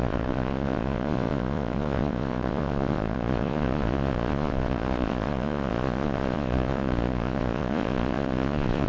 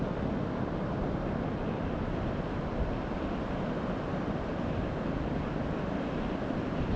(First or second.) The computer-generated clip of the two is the first